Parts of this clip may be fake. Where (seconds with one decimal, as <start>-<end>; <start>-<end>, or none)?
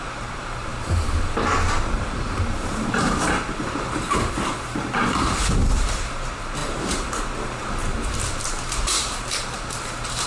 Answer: 0.0-10.3